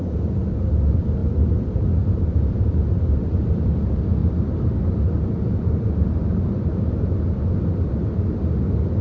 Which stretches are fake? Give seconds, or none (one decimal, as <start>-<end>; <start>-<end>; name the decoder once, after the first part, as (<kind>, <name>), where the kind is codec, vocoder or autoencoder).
1.2-3.8 (vocoder, BigVGAN v2); 4.2-7.2